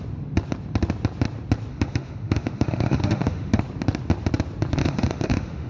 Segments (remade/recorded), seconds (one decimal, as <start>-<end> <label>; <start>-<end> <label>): 0.0-1.7 recorded; 1.7-3.6 remade; 3.6-4.8 recorded; 4.8-5.7 remade